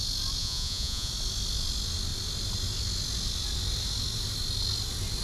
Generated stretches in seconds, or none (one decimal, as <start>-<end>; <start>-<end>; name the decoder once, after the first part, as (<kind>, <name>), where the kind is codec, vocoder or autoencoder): 0.4-1.1 (vocoder, Vocos)